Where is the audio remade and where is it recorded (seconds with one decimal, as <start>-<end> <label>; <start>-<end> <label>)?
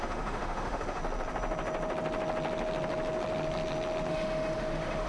0.0-1.0 remade; 1.0-4.1 recorded; 4.1-5.1 remade